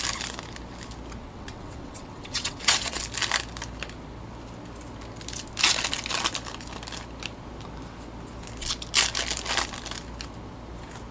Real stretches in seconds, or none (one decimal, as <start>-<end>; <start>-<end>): 0.0-1.2; 3.0-11.1